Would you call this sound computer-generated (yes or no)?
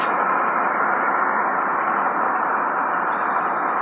no